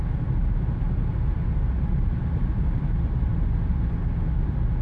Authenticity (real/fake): real